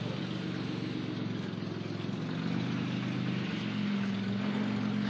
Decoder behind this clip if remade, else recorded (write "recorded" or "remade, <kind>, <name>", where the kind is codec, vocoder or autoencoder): recorded